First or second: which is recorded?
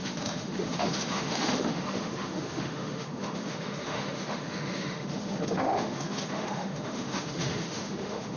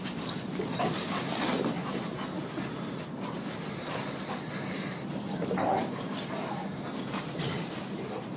second